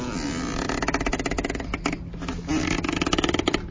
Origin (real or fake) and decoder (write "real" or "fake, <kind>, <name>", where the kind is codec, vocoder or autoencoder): real